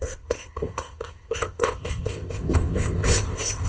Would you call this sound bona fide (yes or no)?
no